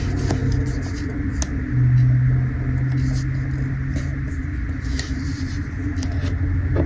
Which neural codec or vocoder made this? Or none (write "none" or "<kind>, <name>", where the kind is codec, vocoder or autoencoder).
none